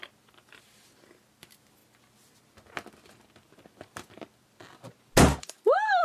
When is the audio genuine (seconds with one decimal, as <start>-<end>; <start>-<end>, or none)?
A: 1.8-5.4